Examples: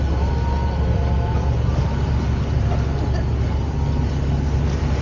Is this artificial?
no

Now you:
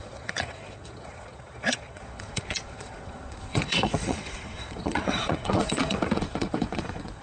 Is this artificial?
yes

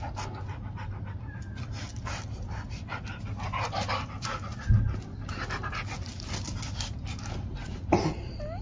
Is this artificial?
no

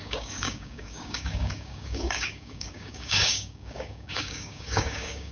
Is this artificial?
yes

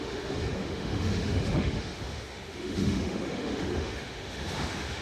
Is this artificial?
yes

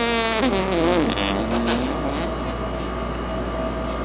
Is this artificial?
no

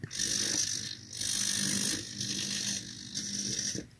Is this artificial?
no